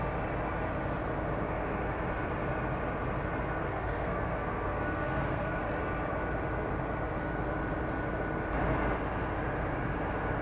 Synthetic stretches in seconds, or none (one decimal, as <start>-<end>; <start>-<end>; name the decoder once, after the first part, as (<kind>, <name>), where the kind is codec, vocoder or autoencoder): 3.6-5.6 (codec, SNAC)